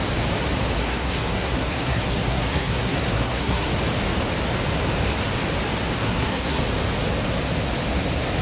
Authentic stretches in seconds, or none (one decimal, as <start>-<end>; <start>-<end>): 0.0-0.8; 3.7-6.0; 6.6-8.4